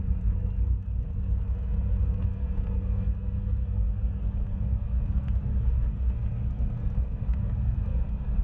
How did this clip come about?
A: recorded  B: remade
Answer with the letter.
B